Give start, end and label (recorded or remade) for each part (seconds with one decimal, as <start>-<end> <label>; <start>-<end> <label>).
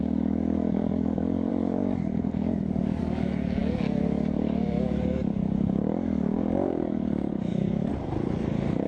0.0-7.9 remade; 7.9-8.9 recorded